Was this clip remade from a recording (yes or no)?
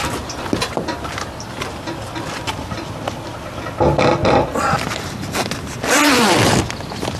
no